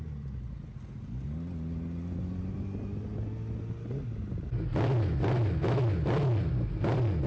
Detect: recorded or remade recorded